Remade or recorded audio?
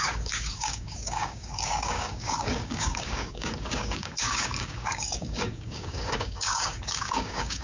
remade